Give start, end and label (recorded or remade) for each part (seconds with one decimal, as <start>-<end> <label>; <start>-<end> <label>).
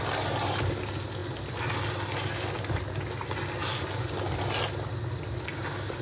0.0-6.0 recorded